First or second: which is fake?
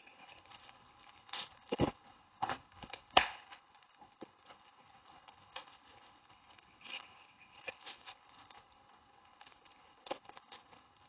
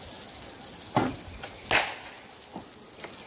first